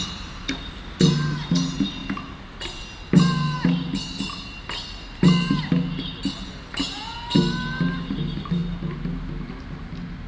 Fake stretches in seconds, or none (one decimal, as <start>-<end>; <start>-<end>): none